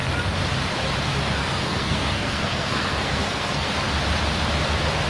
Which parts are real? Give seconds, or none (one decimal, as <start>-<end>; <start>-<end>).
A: 0.0-1.4; 3.7-5.1